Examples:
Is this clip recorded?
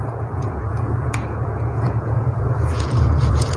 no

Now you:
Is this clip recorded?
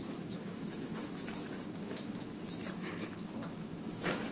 no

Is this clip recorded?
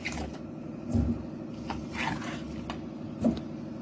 yes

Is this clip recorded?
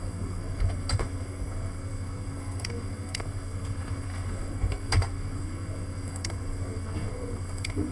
no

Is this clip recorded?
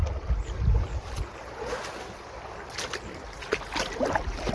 yes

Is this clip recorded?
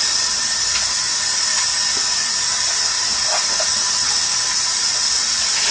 yes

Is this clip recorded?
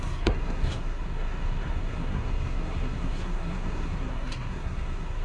no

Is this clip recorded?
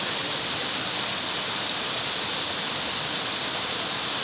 yes